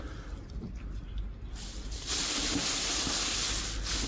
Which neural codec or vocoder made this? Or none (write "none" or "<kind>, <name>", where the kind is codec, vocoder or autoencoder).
none